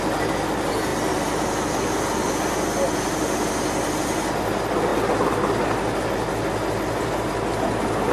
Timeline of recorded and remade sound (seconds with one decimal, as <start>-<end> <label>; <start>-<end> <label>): 0.0-8.1 recorded